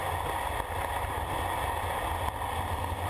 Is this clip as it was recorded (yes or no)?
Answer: yes